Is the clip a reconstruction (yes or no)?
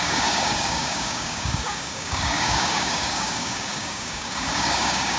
yes